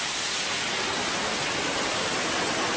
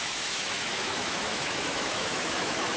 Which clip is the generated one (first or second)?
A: second